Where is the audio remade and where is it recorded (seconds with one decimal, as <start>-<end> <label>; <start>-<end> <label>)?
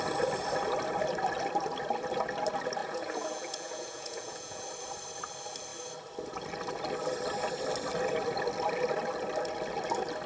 0.0-2.8 recorded; 2.8-4.6 remade; 4.6-10.3 recorded